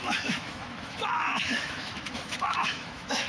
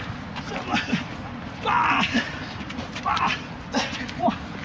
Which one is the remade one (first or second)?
first